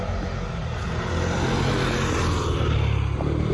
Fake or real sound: real